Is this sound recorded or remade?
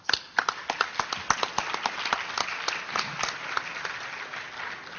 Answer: recorded